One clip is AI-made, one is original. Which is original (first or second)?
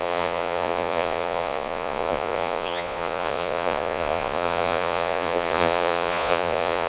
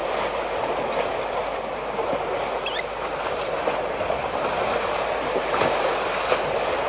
second